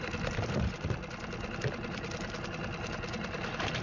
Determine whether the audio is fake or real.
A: fake